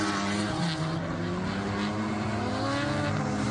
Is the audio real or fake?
real